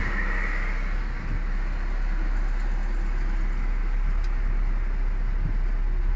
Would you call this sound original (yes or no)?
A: yes